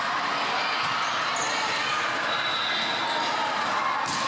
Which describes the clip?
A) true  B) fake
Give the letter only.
A